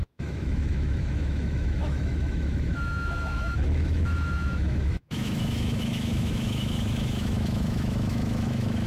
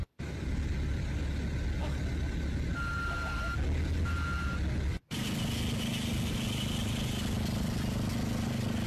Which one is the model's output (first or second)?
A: first